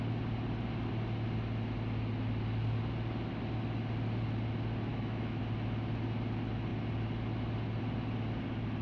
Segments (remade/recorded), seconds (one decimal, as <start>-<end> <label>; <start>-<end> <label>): 0.0-4.9 recorded; 4.9-5.4 remade; 5.4-8.8 recorded